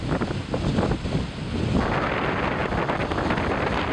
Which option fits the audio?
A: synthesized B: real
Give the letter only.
B